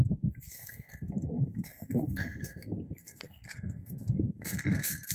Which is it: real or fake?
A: fake